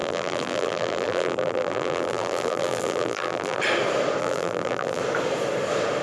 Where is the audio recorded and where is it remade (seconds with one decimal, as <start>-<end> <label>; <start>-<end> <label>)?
0.0-3.6 remade; 3.6-4.2 recorded; 4.2-5.0 remade; 5.0-6.0 recorded